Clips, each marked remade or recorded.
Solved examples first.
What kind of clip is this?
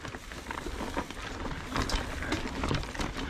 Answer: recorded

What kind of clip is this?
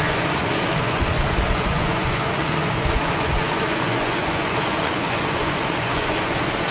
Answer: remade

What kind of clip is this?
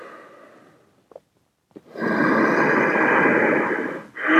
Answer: recorded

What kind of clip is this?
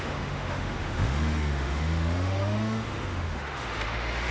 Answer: remade